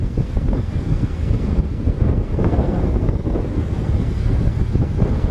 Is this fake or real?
fake